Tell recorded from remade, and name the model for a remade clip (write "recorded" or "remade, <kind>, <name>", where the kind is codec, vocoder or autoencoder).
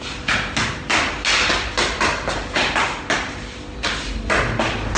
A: recorded